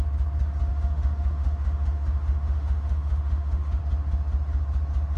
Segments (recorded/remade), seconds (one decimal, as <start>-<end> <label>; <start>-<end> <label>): 0.0-0.7 recorded; 0.7-3.8 remade; 3.8-5.2 recorded